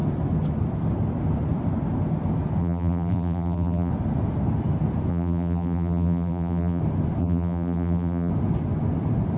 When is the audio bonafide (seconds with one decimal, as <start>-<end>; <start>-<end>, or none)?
0.0-2.6; 3.9-5.1; 6.8-7.2; 8.3-9.4